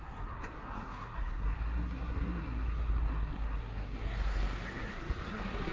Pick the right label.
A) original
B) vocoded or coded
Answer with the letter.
B